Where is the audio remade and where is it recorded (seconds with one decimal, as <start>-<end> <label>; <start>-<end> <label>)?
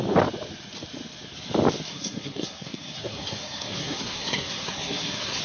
0.0-1.9 recorded; 1.9-5.4 remade